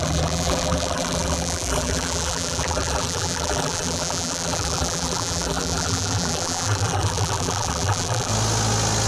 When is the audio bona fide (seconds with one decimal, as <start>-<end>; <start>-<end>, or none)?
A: 8.3-9.1